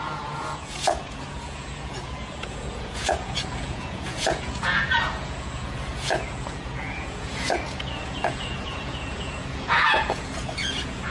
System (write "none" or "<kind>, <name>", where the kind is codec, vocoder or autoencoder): vocoder, Vocos